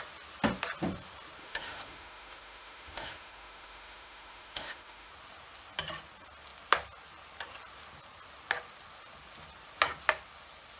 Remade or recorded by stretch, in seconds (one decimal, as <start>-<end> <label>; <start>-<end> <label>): 0.0-1.4 recorded; 1.4-5.1 remade; 5.1-10.8 recorded

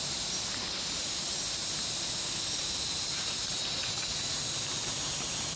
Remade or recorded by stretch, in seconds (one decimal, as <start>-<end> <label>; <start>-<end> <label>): 0.0-5.6 recorded

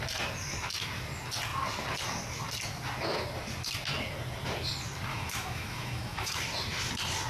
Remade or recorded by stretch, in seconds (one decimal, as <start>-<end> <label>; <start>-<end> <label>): 0.0-5.1 recorded; 5.1-6.4 remade; 6.4-7.3 recorded

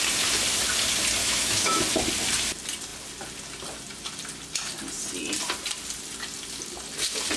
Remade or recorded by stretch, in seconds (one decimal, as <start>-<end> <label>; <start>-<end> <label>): 0.0-1.2 recorded; 1.2-1.8 remade; 1.8-7.4 recorded

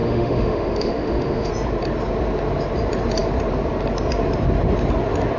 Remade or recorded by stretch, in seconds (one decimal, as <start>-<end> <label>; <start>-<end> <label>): 0.0-1.5 remade; 1.5-5.4 recorded

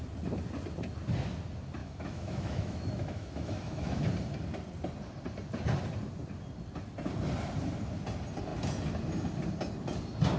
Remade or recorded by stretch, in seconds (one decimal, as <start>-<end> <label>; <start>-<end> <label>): 0.0-1.8 recorded; 1.8-4.0 remade; 4.0-10.4 recorded

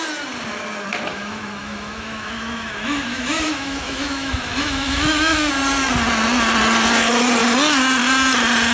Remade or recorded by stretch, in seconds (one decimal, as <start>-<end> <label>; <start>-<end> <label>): 0.0-1.1 recorded; 1.1-5.5 remade; 5.5-8.7 recorded